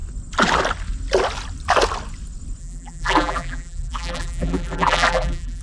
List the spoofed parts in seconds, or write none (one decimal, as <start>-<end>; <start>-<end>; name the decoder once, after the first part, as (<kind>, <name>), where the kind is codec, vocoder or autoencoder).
2.6-5.6 (vocoder, BigVGAN v2)